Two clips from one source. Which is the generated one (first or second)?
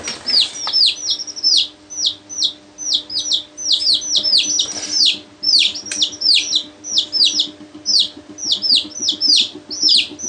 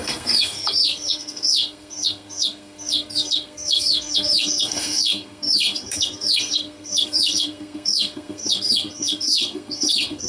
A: second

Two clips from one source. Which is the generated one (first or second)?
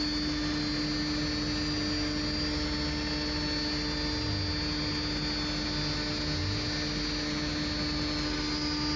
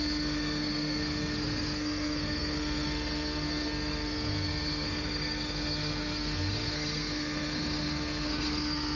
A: second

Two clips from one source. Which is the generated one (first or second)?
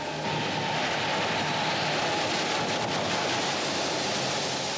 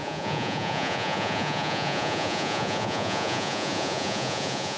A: second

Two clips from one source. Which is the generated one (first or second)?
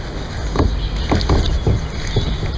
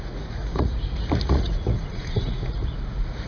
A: second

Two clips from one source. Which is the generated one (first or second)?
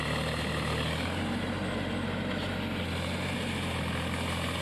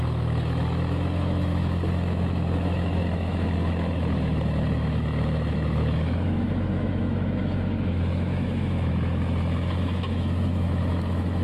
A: second